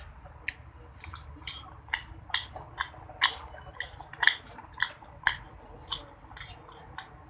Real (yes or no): yes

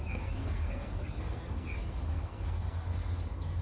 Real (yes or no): no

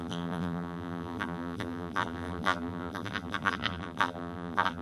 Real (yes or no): no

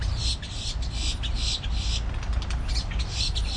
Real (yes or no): yes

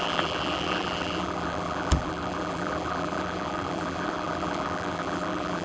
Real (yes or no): no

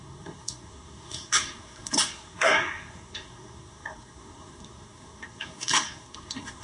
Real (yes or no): no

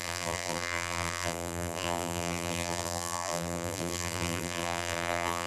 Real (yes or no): no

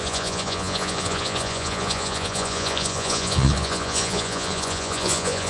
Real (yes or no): no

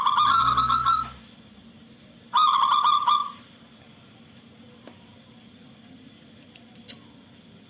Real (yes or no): yes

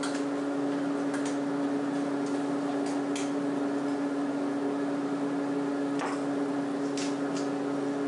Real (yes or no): yes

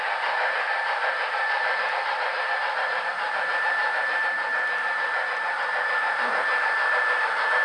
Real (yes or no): no